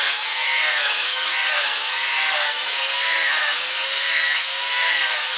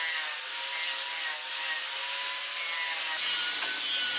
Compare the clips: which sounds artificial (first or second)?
first